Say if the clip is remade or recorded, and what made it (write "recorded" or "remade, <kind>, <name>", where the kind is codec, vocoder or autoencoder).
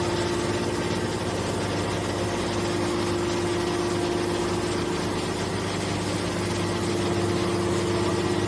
recorded